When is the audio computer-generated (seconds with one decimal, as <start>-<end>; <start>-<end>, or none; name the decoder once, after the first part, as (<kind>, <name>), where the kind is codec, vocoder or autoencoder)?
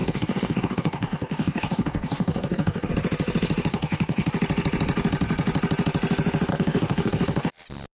0.0-2.9 (codec, DAC); 3.7-4.3; 6.5-7.5